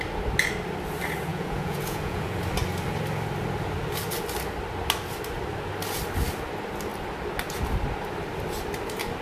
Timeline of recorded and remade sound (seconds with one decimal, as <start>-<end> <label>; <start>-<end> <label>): 0.0-1.3 recorded; 1.3-2.4 remade; 2.4-9.2 recorded